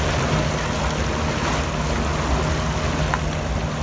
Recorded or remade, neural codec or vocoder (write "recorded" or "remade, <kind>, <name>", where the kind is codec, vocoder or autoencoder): recorded